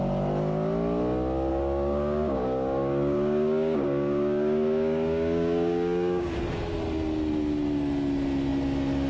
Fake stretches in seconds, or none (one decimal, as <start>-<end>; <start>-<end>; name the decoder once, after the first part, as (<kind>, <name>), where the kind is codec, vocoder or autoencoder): 1.5-6.4 (codec, DAC)